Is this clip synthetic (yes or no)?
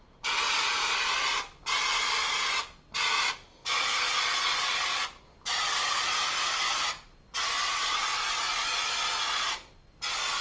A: no